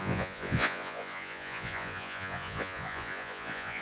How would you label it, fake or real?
fake